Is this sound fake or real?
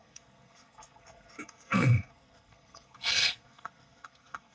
fake